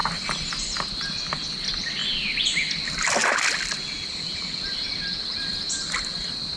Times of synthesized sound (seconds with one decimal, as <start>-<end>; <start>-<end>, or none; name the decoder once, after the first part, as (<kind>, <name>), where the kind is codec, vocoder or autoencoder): none

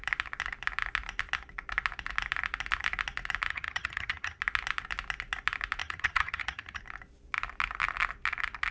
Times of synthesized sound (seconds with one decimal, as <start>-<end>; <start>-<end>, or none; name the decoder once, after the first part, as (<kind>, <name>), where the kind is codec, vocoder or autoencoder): 3.5-4.4 (vocoder, HiFi-GAN); 5.8-6.8

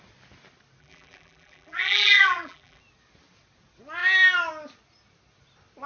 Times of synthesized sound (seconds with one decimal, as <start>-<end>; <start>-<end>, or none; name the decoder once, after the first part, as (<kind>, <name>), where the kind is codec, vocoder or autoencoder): 0.8-2.8 (vocoder, BigVGAN v2)